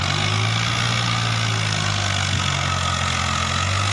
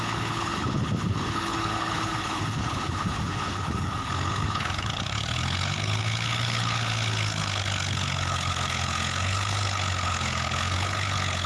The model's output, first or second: second